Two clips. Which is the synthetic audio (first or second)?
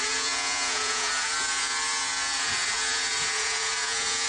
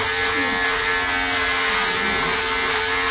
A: first